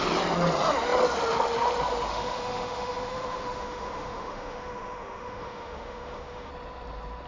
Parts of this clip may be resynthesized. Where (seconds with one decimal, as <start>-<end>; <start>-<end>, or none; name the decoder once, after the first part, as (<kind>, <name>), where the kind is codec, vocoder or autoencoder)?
2.1-6.5 (autoencoder, DAC-VAE)